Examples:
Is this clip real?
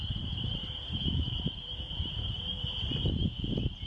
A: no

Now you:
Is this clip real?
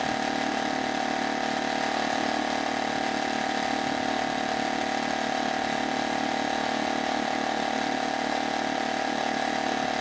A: yes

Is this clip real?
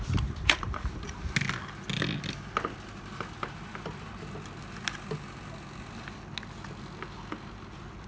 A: yes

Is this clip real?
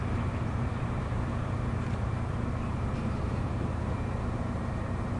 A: no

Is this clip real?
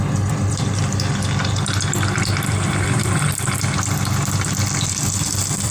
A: no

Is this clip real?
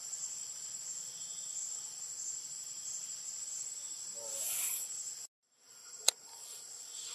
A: yes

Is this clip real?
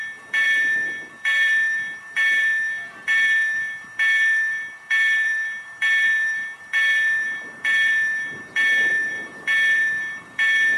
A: no